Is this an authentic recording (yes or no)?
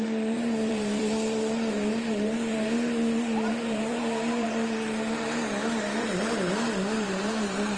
no